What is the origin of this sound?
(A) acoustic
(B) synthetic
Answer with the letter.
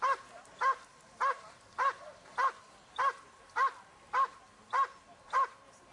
A